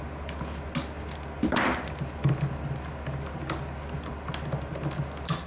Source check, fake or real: real